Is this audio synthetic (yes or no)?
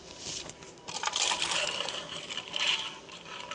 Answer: yes